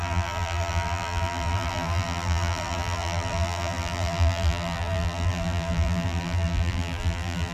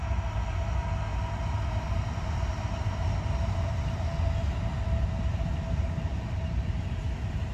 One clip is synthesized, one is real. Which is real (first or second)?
second